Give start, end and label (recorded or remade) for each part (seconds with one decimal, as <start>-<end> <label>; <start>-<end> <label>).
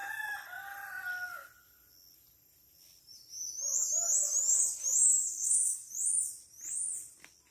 0.0-5.2 recorded; 5.2-5.9 remade; 5.9-7.5 recorded